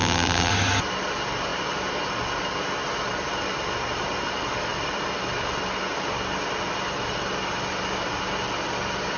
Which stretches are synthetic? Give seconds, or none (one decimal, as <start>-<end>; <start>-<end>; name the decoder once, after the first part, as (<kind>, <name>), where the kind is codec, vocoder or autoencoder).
0.0-0.5 (vocoder, BigVGAN v2)